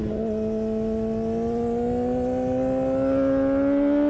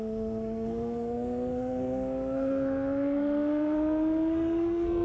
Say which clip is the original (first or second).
first